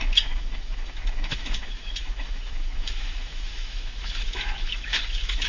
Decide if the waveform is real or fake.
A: fake